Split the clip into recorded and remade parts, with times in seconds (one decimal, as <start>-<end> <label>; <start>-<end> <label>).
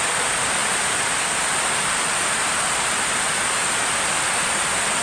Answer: 0.0-5.0 recorded